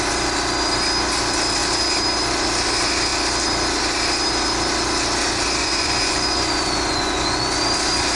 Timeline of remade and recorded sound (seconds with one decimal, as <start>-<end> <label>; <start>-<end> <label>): 0.0-5.6 recorded; 5.6-7.6 remade; 7.6-8.2 recorded